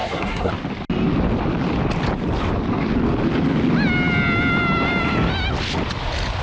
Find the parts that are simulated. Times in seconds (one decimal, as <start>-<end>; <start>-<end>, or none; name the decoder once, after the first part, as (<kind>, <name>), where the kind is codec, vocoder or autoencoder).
0.0-0.5 (codec, SNAC)